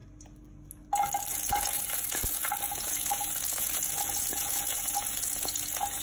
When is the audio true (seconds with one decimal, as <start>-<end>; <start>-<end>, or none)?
0.0-1.3